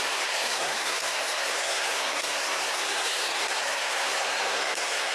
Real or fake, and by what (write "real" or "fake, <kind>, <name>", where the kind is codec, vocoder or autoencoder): fake, codec, SNAC